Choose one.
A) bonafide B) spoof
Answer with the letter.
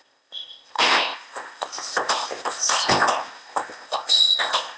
B